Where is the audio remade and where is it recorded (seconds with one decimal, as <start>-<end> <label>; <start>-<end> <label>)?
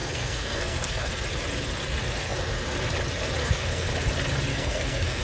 0.0-1.1 remade; 1.1-3.4 recorded; 3.4-3.9 remade; 3.9-4.5 recorded; 4.5-5.2 remade